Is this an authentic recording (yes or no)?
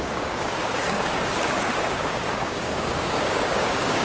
no